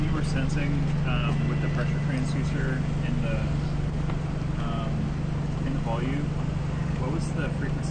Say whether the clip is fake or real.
real